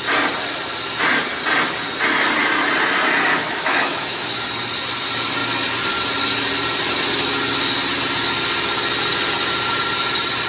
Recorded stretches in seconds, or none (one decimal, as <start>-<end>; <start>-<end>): 0.0-3.4; 4.4-10.5